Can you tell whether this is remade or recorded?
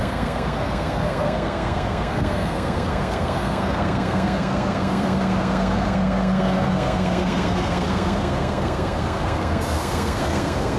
remade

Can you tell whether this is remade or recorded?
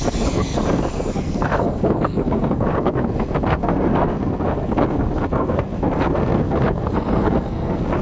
remade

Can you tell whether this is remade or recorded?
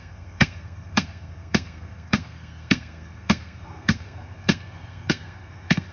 remade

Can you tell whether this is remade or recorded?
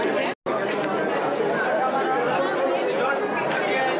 recorded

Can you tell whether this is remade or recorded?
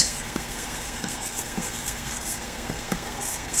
remade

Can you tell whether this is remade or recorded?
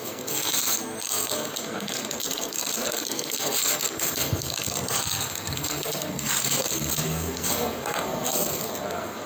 remade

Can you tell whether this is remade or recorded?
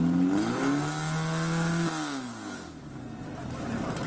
recorded